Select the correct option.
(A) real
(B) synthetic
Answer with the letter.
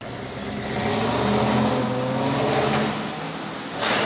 A